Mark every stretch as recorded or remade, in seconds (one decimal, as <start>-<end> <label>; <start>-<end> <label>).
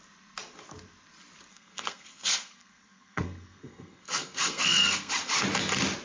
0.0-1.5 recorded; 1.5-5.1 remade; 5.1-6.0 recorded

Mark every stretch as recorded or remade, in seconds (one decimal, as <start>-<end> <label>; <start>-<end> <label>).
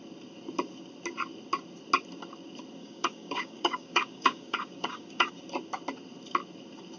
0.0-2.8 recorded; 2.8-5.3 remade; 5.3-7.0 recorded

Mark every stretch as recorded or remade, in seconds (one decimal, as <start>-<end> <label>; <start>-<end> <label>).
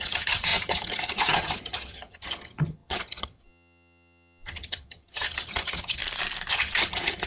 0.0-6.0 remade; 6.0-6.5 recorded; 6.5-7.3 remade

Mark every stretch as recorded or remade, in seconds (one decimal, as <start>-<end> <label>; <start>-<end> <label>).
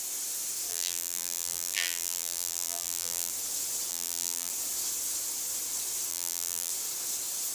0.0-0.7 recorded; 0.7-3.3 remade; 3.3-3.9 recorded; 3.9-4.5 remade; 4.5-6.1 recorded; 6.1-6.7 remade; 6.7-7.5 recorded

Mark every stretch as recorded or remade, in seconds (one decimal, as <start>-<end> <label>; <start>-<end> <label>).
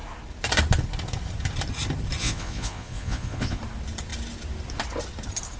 0.0-2.2 recorded; 2.2-3.6 remade; 3.6-5.6 recorded